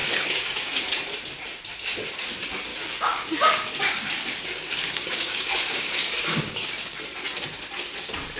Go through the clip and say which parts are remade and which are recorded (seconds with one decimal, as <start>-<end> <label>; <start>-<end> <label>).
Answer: 0.0-0.8 remade; 0.8-2.7 recorded; 2.7-7.0 remade; 7.0-8.4 recorded